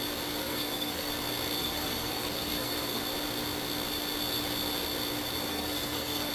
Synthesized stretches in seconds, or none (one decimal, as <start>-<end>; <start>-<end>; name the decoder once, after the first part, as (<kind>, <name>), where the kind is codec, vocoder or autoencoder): 0.4-1.1 (codec, SNAC); 1.6-3.0; 5.5-6.3